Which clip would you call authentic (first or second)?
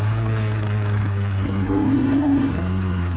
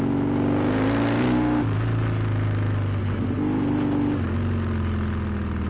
second